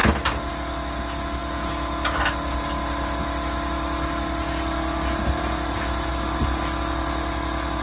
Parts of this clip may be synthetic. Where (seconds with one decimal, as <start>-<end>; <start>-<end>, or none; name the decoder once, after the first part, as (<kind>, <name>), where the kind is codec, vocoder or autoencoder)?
none